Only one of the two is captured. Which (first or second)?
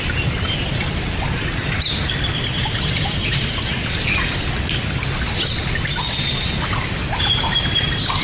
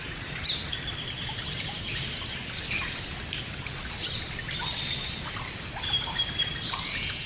first